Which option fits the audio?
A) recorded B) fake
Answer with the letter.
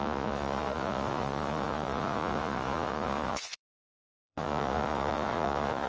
B